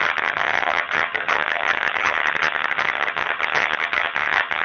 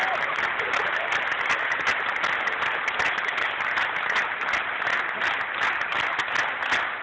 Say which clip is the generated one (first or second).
first